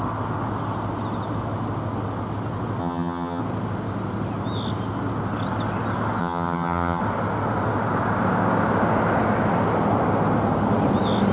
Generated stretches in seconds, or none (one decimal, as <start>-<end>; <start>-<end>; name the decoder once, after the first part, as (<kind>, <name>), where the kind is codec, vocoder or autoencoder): 2.8-3.4 (vocoder, HiFi-GAN); 6.2-7.0